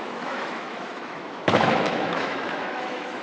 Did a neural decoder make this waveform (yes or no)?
yes